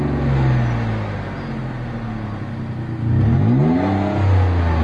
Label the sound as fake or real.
real